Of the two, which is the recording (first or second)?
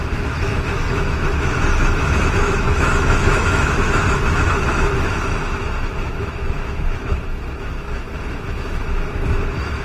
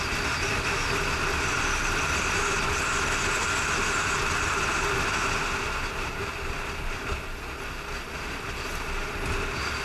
second